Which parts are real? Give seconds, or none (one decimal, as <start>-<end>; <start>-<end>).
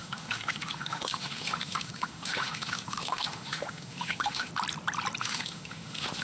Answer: 4.5-5.2